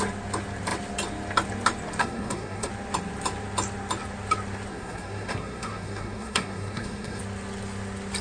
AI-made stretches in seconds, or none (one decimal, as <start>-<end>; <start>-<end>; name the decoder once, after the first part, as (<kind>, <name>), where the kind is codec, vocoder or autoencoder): 2.0-2.7 (codec, SNAC); 4.7-7.2